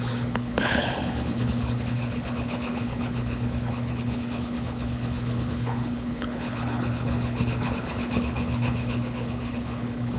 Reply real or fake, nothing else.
fake